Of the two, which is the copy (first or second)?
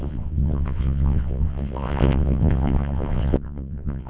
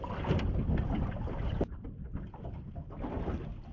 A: first